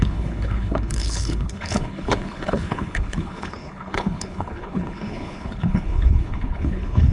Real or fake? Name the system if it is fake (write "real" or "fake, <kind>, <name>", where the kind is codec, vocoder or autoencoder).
fake, codec, HILCodec